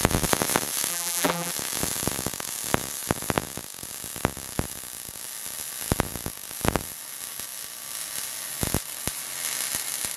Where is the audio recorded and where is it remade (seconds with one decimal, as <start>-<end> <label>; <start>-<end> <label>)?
0.0-0.9 recorded; 0.9-1.5 remade; 1.5-10.2 recorded